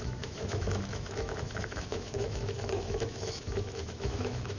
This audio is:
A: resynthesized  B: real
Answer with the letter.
A